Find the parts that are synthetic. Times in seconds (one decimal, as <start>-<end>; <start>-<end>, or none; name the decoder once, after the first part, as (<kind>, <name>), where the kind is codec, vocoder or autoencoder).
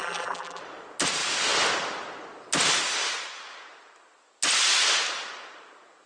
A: 0.0-0.6 (vocoder, BigVGAN v2)